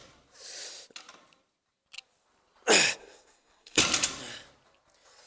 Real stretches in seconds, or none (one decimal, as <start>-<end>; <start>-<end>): 0.0-3.0; 3.8-5.3